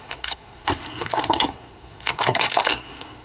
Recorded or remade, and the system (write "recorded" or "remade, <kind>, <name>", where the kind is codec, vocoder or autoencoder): remade, codec, SNAC